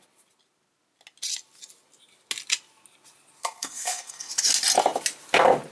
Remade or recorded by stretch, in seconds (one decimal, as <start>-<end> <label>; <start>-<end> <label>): 0.0-3.4 recorded; 3.4-4.3 remade; 4.3-5.7 recorded